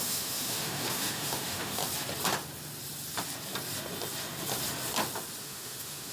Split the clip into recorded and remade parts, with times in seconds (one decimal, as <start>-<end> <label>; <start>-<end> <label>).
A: 0.0-1.8 remade; 1.8-5.4 recorded; 5.4-6.1 remade